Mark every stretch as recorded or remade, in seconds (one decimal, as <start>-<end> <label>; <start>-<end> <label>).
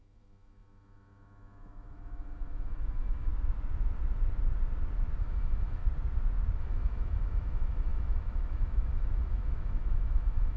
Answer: 0.0-3.3 remade; 3.3-5.2 recorded; 5.2-5.8 remade; 5.8-6.6 recorded; 6.6-10.6 remade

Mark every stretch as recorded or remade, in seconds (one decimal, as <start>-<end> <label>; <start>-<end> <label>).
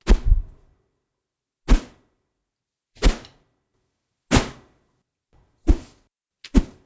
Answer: 0.0-6.9 recorded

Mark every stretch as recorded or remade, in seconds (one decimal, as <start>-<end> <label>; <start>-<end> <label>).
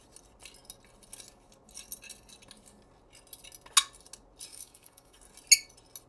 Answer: 0.0-4.5 recorded; 4.5-5.2 remade; 5.2-6.1 recorded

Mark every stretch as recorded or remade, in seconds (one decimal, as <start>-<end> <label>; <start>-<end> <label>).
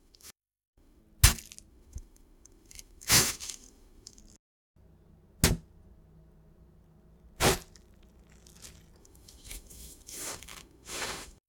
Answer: 0.0-1.0 remade; 1.0-1.7 recorded; 1.7-4.2 remade; 4.2-9.0 recorded; 9.0-11.5 remade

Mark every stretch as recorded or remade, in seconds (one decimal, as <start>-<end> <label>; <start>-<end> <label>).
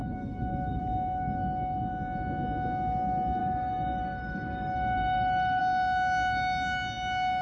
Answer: 0.0-0.8 remade; 0.8-3.4 recorded; 3.4-5.6 remade; 5.6-7.4 recorded